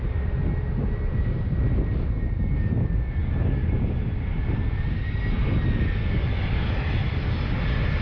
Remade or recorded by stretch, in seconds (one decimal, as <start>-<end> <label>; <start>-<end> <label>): 0.0-8.0 recorded